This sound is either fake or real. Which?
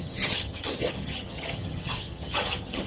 fake